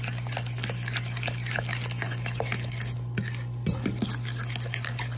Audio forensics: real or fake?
real